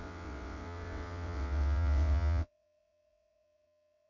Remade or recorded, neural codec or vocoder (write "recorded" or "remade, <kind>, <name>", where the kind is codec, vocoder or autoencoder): remade, vocoder, WaveNeXt